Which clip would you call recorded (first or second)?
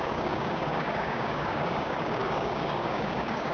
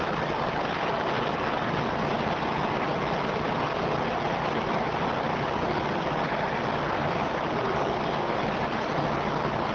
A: second